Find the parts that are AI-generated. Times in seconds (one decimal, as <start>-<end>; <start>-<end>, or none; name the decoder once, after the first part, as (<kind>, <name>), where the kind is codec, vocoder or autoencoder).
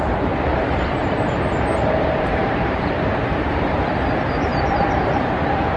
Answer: 0.5-4.0 (vocoder, BigVGAN v2); 4.5-5.8